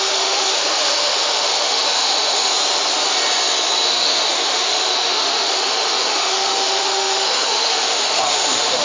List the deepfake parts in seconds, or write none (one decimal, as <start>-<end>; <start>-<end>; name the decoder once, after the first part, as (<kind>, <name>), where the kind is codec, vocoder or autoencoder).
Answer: 0.0-2.5 (autoencoder, DAC-VAE); 3.9-8.8